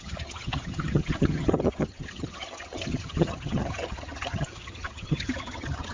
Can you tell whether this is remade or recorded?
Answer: remade